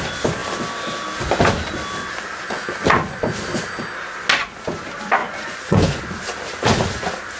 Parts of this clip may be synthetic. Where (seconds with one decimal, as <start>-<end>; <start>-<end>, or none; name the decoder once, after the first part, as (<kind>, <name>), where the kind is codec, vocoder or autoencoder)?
5.2-6.0 (vocoder, Vocos)